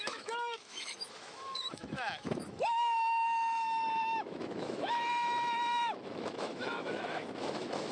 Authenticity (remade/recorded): remade